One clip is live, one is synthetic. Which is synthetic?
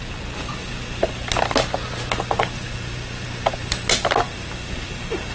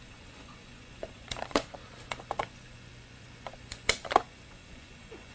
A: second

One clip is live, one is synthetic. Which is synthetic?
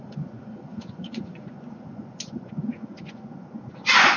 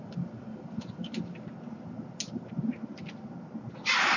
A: first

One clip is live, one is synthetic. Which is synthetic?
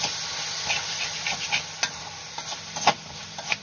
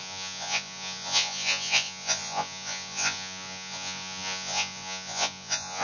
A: second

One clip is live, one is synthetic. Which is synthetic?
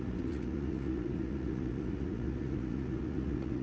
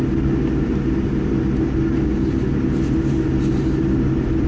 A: first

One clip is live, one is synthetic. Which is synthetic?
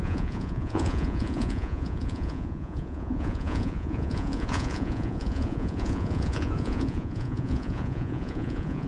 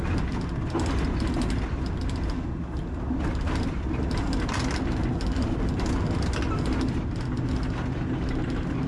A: first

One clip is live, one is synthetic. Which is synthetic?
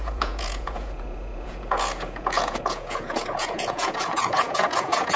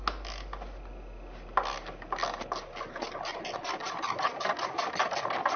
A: first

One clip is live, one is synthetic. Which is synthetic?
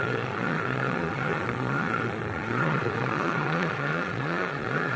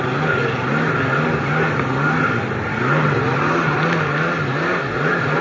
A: first